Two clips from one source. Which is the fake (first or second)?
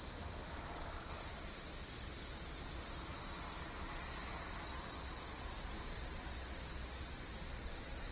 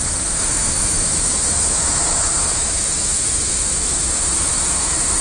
second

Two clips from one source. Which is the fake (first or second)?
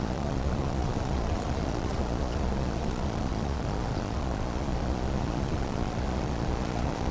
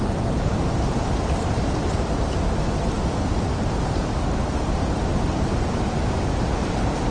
first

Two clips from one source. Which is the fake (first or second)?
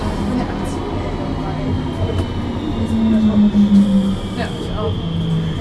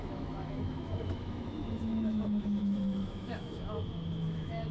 second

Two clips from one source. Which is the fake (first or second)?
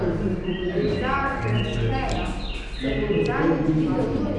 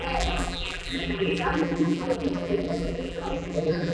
second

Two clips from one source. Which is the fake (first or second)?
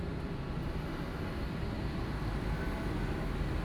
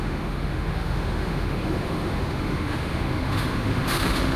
second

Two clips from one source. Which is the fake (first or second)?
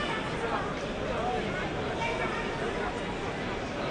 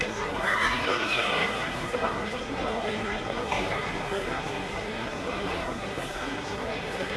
second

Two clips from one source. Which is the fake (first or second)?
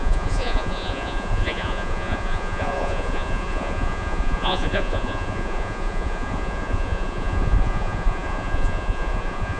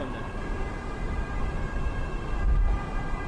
first